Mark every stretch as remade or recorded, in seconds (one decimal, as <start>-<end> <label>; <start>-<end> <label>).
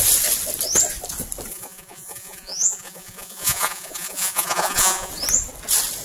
0.0-1.5 recorded; 1.5-5.1 remade; 5.1-6.0 recorded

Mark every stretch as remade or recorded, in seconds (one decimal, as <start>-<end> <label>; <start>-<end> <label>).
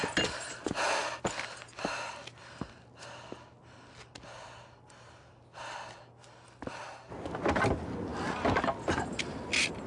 0.0-9.9 recorded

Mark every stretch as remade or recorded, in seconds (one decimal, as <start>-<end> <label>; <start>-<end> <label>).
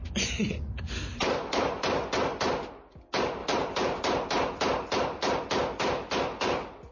0.0-0.7 remade; 0.7-6.9 recorded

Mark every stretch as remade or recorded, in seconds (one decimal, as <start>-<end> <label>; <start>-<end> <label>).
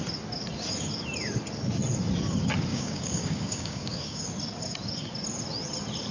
0.0-2.7 recorded; 2.7-4.3 remade; 4.3-6.1 recorded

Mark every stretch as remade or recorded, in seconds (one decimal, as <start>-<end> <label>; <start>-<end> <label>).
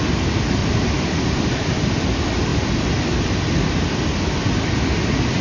0.0-0.6 recorded; 0.6-1.5 remade; 1.5-5.4 recorded